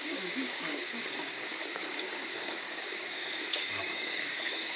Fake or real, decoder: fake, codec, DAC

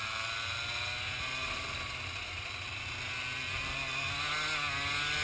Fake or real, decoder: real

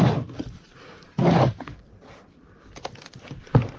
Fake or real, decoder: real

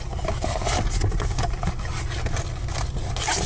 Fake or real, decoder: real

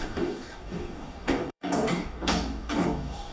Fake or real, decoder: fake, codec, DAC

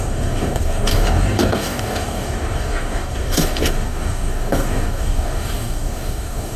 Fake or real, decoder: fake, codec, DAC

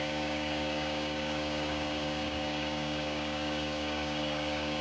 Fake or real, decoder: fake, codec, DAC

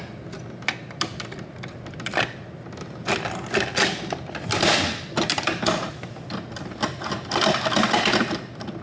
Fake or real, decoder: real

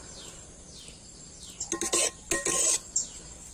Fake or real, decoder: real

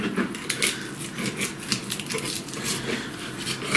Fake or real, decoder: real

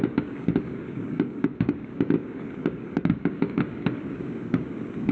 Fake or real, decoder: fake, codec, DAC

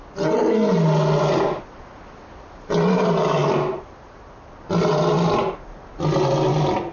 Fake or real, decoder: real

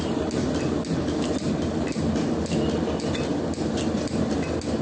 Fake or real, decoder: real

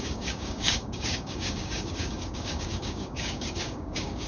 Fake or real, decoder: fake, codec, DAC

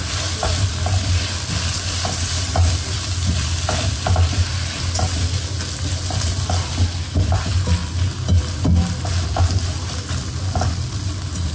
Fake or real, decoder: real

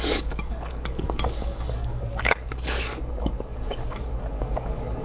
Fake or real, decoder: fake, codec, DAC